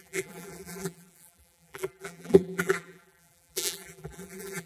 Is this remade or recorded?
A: remade